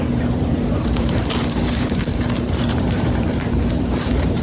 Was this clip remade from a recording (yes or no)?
yes